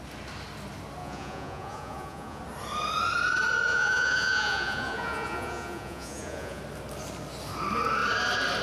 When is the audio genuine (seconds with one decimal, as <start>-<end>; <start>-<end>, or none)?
0.0-1.0; 2.4-3.7; 6.6-8.6